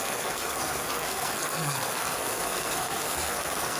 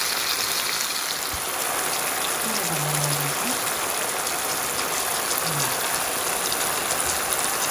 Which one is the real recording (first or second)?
second